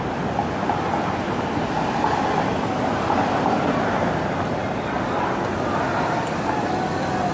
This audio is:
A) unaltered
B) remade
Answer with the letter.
A